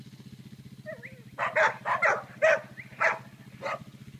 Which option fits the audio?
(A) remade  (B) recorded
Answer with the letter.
B